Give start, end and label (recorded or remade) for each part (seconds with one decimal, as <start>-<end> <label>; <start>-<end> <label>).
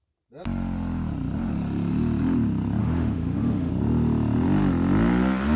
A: 0.0-2.8 recorded; 2.8-3.7 remade; 3.7-5.6 recorded